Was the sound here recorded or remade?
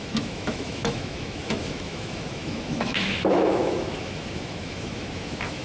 remade